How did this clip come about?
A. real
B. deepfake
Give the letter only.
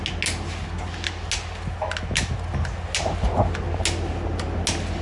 A